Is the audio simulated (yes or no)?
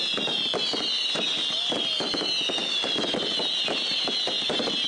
no